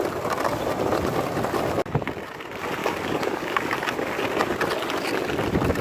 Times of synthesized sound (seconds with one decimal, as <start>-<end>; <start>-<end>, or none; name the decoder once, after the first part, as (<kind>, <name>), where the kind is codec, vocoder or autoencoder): 2.8-3.7 (codec, DAC)